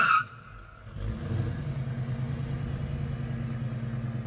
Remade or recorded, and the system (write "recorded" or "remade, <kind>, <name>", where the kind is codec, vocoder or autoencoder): recorded